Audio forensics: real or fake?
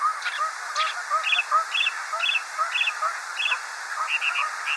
real